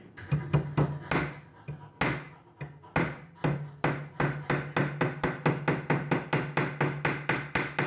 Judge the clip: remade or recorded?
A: recorded